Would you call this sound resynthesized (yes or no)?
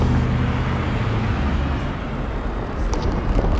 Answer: no